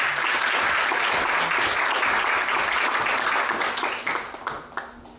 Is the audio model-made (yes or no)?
no